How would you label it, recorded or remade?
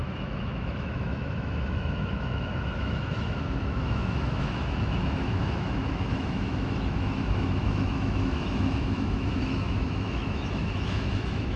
remade